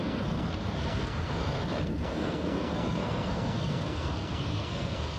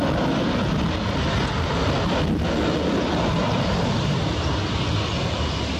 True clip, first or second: second